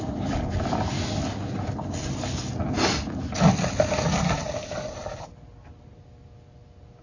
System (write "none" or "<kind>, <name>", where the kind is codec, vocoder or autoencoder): none